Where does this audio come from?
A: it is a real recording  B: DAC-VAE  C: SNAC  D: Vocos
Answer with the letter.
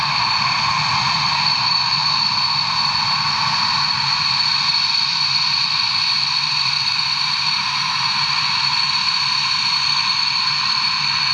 A